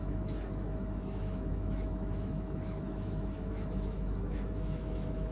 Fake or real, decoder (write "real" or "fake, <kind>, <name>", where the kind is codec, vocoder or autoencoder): fake, autoencoder, DAC-VAE